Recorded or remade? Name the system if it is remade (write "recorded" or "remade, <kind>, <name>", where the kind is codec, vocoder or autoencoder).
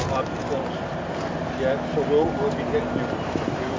recorded